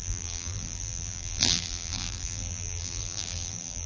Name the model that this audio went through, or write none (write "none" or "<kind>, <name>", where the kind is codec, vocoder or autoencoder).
vocoder, BigVGAN v2